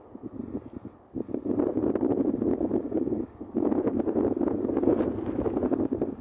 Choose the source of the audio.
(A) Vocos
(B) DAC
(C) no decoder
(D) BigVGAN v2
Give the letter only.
C